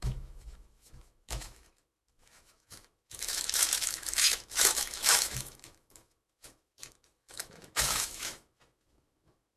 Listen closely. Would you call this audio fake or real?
fake